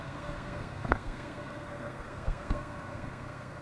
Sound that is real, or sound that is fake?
fake